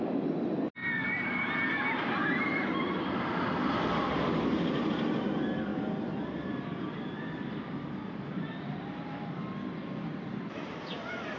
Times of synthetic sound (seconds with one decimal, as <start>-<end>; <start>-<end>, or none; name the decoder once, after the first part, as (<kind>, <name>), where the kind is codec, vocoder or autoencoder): 0.8-5.0 (vocoder, BigVGAN v2); 5.7-10.9